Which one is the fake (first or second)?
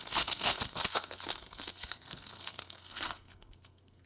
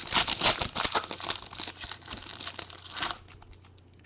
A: first